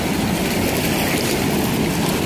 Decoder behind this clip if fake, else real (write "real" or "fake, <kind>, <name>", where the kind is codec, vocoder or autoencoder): real